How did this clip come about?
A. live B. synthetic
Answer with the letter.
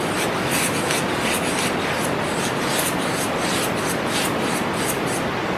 A